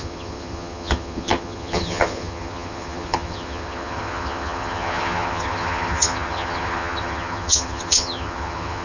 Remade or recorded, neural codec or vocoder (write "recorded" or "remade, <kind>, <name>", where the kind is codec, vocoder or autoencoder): remade, vocoder, HiFi-GAN